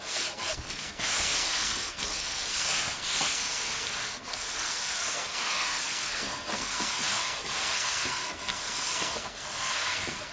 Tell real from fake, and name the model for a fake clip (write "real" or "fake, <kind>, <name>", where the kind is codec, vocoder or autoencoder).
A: fake, codec, SNAC